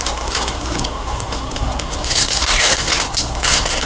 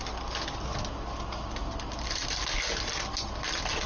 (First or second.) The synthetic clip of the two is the first